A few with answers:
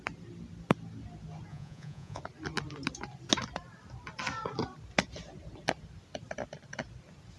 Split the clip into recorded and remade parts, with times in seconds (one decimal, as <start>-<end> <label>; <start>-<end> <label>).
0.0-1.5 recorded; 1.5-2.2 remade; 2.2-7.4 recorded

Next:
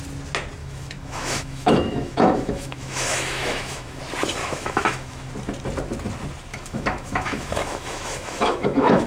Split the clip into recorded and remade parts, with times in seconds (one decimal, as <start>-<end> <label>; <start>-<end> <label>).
0.0-0.6 recorded; 0.6-4.0 remade; 4.0-4.4 recorded; 4.4-5.3 remade; 5.3-6.5 recorded; 6.5-9.1 remade

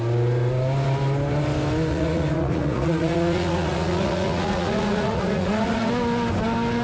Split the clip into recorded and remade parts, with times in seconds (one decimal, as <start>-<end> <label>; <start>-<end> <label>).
0.0-1.9 recorded; 1.9-5.9 remade; 5.9-6.8 recorded

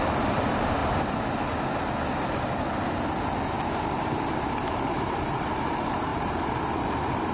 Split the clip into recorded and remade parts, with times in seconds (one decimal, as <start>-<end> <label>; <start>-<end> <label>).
0.0-0.8 remade; 0.8-4.7 recorded; 4.7-7.3 remade